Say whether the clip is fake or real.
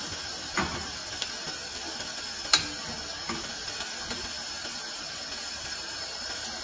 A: real